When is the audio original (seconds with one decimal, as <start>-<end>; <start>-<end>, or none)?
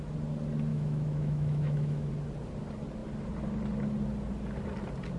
0.0-0.7; 2.1-5.2